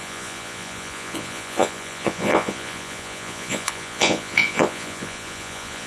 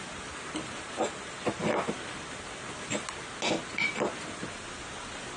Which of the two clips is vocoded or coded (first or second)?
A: first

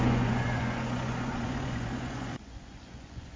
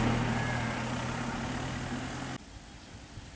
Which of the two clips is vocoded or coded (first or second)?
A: first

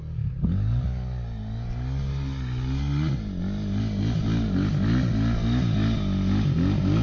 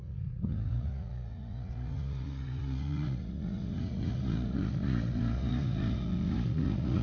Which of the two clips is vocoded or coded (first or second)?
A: second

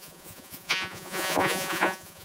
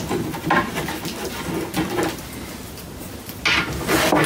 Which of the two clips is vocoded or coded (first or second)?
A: first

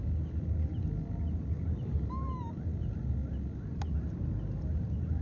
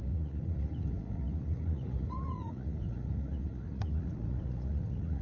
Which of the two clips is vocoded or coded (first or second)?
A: second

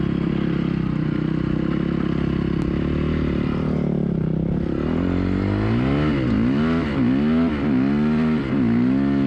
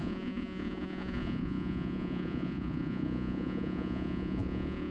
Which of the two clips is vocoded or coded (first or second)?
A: second